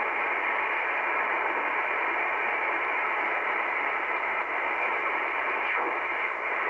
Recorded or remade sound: remade